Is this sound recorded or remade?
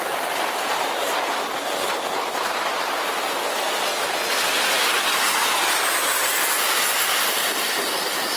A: recorded